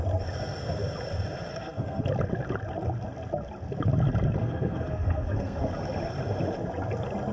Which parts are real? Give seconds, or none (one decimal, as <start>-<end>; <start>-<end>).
0.0-1.5; 2.0-4.4; 5.7-7.3